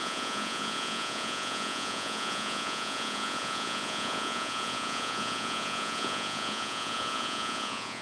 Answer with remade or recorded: remade